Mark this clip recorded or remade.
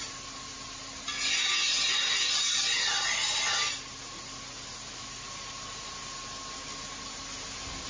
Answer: recorded